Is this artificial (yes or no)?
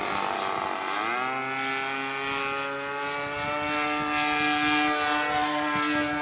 no